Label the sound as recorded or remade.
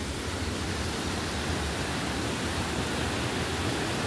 recorded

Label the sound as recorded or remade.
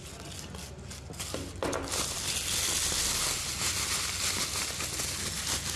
recorded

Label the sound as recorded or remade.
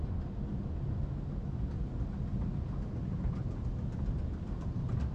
recorded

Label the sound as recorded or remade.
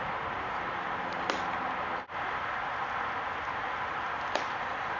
recorded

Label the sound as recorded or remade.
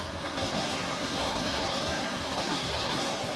remade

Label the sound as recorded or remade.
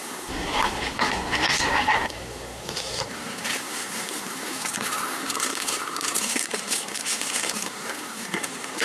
remade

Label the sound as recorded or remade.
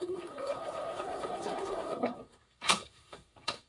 remade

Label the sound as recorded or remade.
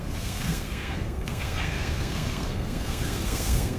remade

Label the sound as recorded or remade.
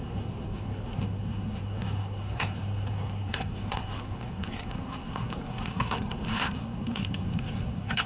remade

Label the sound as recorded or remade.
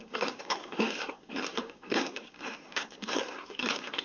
remade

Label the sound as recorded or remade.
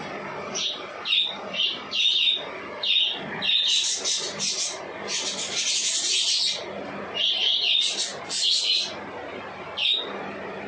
recorded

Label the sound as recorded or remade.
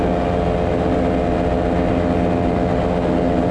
recorded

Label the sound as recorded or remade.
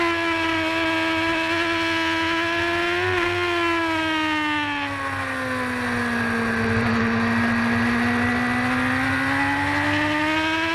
recorded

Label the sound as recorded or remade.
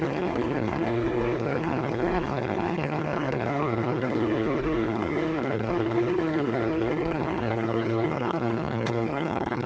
remade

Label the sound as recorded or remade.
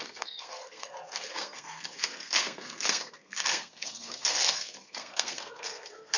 remade